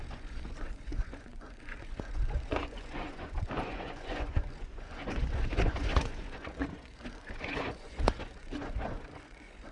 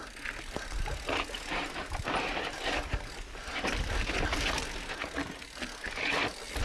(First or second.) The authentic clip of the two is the second